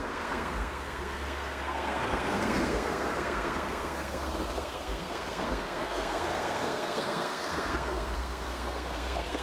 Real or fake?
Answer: fake